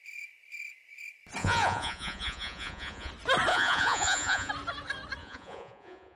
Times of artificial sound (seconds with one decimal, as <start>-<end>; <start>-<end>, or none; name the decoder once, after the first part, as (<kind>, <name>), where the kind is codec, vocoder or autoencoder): 1.4-3.1 (vocoder, Vocos); 3.5-4.5; 5.2-6.2